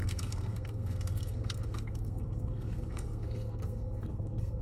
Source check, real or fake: fake